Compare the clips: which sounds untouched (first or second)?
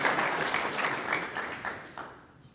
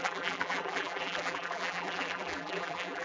first